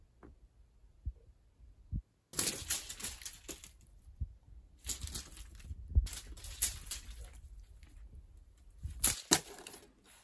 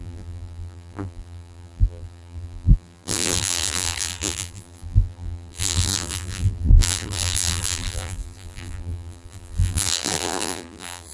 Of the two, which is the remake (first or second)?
second